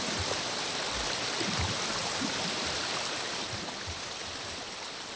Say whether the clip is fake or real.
real